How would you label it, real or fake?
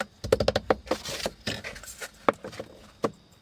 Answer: real